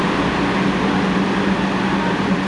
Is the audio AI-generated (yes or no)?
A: no